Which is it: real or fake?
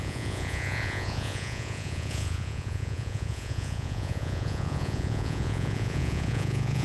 fake